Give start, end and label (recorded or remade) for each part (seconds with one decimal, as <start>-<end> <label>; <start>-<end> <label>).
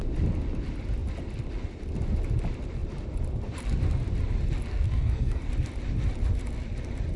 0.0-4.7 recorded; 4.7-5.5 remade; 5.5-7.2 recorded